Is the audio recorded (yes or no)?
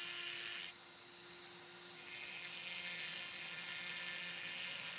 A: yes